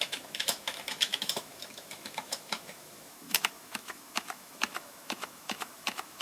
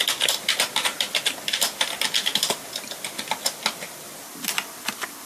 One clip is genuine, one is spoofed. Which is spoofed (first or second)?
first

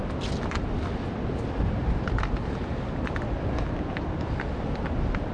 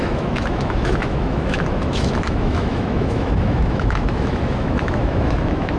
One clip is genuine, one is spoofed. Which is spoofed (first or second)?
second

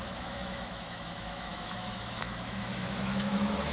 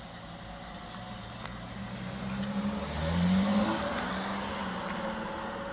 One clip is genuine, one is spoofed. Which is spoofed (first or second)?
first